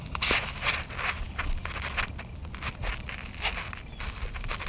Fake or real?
real